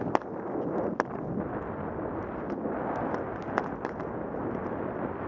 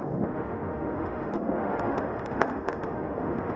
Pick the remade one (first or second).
second